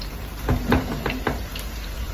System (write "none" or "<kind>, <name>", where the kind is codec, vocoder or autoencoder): vocoder, BigVGAN v2